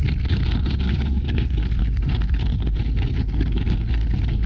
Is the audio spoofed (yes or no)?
yes